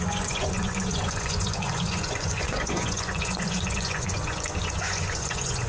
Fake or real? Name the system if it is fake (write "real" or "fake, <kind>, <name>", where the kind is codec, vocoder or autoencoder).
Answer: fake, vocoder, Vocos